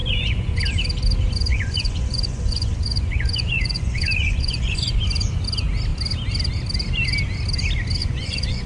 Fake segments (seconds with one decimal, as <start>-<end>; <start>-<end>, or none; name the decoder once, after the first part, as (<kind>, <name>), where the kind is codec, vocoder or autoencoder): 0.0-0.6 (vocoder, Vocos); 1.5-5.0; 8.0-8.7